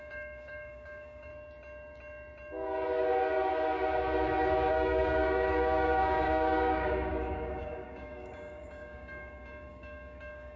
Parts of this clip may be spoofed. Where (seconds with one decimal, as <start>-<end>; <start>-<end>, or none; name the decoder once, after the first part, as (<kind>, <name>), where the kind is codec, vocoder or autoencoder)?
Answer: 0.0-1.3 (codec, DAC); 4.7-10.6